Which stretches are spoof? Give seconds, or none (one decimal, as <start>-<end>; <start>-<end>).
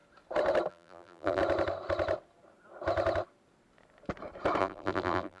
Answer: 0.7-1.4; 4.6-5.4